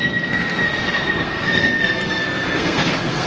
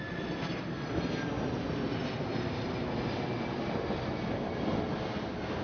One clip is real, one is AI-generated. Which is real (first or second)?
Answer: second